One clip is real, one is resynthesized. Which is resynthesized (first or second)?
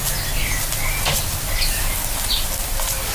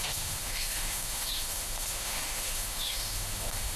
second